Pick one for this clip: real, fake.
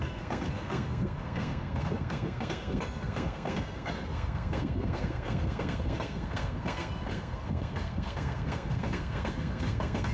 fake